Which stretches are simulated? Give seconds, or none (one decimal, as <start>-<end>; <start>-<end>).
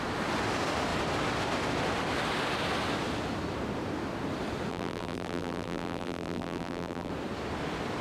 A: 4.7-7.1